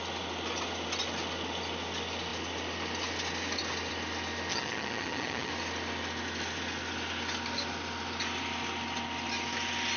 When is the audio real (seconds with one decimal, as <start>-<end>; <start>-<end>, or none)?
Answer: 0.0-4.5; 5.5-10.0